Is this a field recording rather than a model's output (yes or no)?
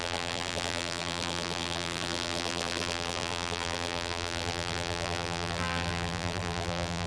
no